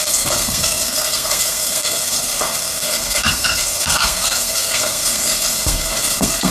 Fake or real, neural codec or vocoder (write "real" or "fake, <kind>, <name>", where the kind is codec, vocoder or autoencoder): fake, codec, SNAC